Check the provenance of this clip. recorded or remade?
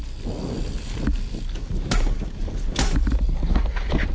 recorded